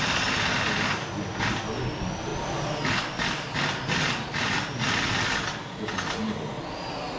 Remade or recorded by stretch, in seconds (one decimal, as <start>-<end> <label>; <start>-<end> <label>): 0.0-7.2 recorded